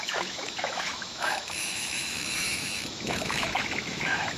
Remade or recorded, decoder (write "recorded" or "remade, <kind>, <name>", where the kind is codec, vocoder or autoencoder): remade, autoencoder, DAC-VAE